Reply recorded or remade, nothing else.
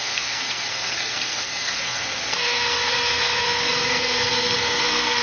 remade